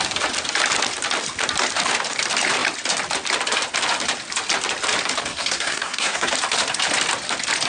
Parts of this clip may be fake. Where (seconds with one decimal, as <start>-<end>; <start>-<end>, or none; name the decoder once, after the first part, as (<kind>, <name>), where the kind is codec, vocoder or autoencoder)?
5.3-6.3 (codec, SNAC)

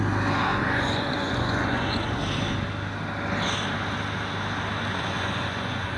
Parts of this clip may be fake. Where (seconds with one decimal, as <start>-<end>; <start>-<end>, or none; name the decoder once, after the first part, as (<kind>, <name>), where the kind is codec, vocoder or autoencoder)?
0.5-2.2 (vocoder, Vocos); 4.9-6.0